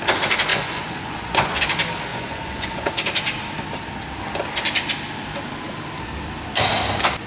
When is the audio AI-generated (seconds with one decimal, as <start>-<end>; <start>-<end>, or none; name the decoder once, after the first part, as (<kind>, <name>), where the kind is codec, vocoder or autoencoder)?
0.5-1.6 (vocoder, Vocos); 2.1-2.9